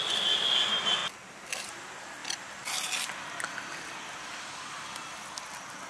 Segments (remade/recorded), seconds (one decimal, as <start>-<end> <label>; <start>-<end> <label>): 0.0-5.9 recorded